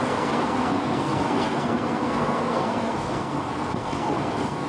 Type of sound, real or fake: fake